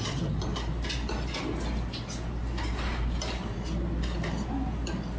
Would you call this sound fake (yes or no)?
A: no